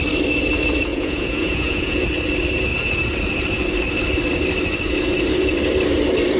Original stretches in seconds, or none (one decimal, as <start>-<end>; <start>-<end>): 0.0-0.9; 1.9-6.4